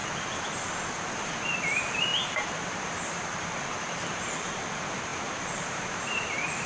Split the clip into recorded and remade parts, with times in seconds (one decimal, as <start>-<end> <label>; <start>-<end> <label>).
0.0-1.6 recorded; 1.6-6.7 remade